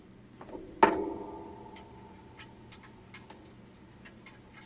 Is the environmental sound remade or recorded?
recorded